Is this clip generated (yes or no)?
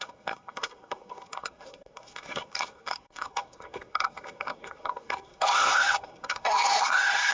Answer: yes